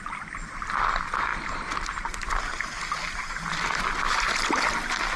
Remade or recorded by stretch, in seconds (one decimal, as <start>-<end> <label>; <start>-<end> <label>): 0.0-1.3 recorded; 1.3-2.4 remade; 2.4-3.0 recorded; 3.0-3.8 remade; 3.8-5.2 recorded